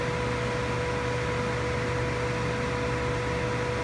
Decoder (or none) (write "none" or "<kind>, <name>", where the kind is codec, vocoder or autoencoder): none